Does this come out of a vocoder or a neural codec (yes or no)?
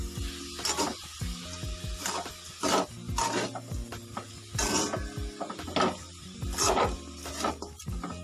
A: no